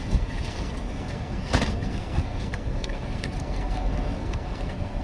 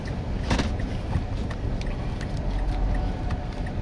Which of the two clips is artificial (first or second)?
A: first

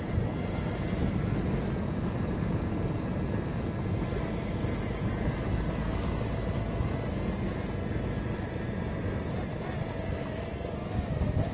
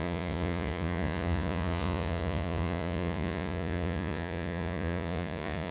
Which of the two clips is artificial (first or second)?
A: second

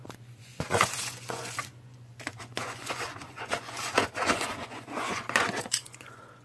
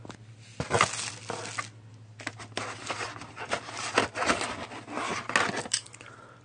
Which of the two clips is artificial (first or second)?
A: first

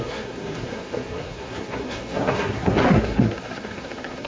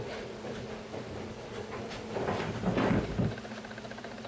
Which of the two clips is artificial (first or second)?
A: first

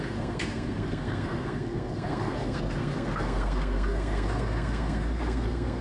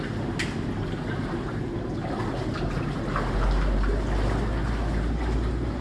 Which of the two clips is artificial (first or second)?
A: first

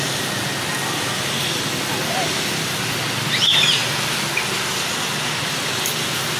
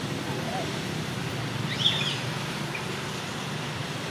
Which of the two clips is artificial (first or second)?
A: second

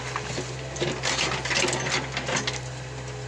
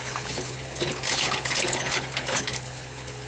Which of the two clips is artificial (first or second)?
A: second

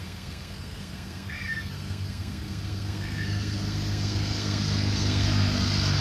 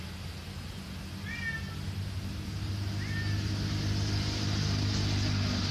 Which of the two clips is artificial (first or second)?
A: first